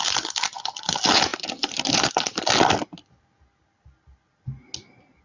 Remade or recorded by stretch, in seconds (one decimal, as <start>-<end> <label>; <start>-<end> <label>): 0.0-1.3 recorded; 1.3-2.1 remade; 2.1-5.2 recorded